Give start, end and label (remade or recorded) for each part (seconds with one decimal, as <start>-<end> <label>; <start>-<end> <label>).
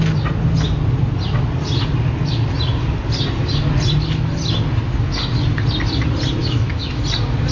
0.0-6.4 recorded; 6.4-7.0 remade; 7.0-7.5 recorded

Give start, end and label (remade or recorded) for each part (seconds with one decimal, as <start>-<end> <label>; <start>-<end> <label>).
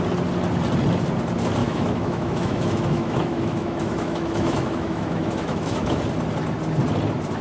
0.0-1.6 recorded; 1.6-6.0 remade; 6.0-7.4 recorded